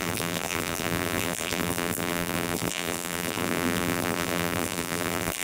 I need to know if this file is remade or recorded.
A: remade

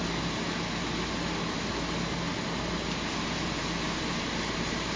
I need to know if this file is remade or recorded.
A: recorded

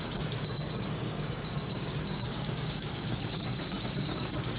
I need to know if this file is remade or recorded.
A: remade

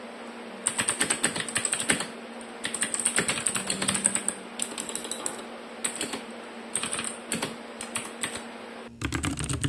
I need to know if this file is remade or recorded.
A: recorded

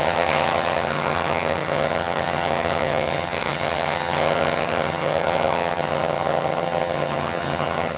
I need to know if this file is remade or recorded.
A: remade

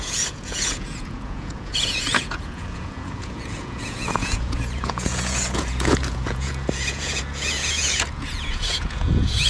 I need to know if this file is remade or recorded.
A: remade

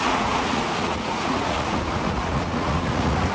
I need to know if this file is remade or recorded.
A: remade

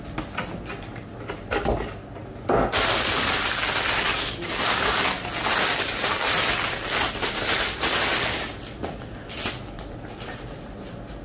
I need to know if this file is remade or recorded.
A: recorded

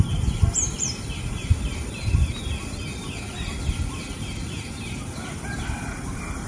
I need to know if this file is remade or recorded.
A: recorded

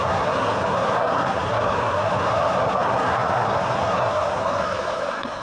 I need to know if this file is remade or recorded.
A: remade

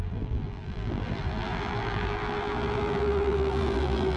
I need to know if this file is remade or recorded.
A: remade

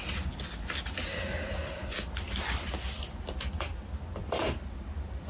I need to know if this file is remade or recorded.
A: recorded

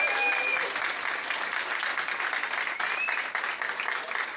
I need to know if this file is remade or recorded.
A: recorded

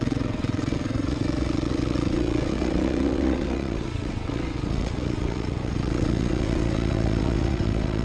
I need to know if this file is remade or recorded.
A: remade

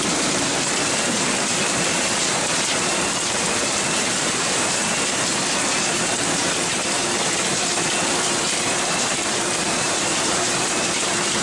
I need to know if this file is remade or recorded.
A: remade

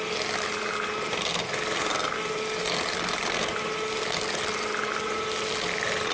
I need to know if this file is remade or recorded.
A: recorded